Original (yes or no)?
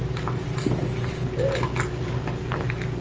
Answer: yes